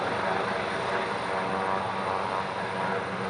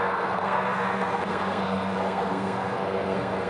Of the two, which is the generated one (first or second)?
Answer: second